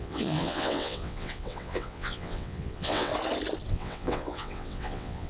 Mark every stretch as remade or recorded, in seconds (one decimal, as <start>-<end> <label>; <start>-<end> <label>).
0.0-3.1 remade; 3.1-3.7 recorded; 3.7-5.3 remade